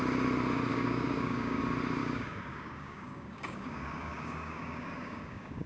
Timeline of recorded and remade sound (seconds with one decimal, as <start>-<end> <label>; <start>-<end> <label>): 0.0-0.7 recorded; 0.7-1.6 remade; 1.6-2.0 recorded; 2.0-5.7 remade

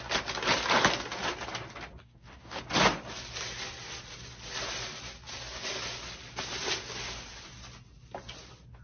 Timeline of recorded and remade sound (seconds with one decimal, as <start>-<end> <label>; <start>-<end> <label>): 0.0-2.0 recorded; 2.0-2.6 remade; 2.6-8.8 recorded

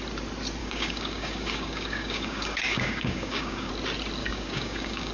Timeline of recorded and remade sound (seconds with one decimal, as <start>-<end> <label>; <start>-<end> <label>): 0.0-0.6 recorded; 0.6-3.7 remade; 3.7-4.2 recorded; 4.2-5.1 remade

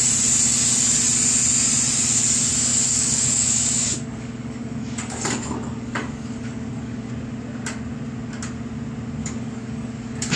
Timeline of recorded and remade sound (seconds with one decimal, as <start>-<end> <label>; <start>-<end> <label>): 0.0-2.7 recorded; 2.7-7.1 remade; 7.1-9.2 recorded; 9.2-10.4 remade

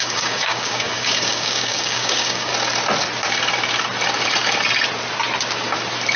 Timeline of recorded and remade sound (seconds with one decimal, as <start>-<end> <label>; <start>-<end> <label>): 0.0-2.5 remade; 2.5-6.2 recorded

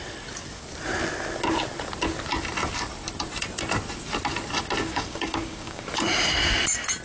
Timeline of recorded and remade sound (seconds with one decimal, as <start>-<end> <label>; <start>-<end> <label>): 0.0-4.8 recorded; 4.8-5.9 remade; 5.9-7.0 recorded

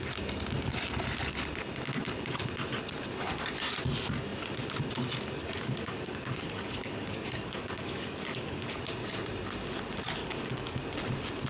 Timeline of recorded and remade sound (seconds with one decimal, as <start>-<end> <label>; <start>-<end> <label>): 0.0-5.4 recorded; 5.4-8.8 remade; 8.8-10.2 recorded; 10.2-10.8 remade; 10.8-11.5 recorded